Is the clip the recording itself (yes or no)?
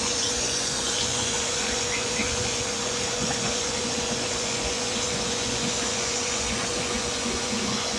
no